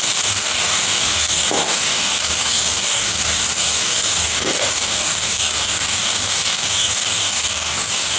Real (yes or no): no